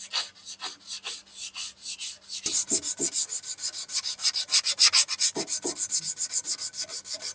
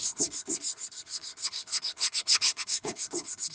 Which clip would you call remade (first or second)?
second